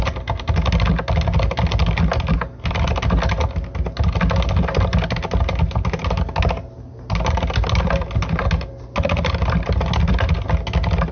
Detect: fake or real real